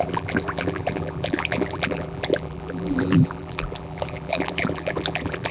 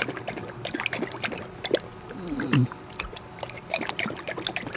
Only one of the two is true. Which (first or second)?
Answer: second